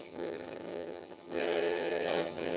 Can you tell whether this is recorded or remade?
remade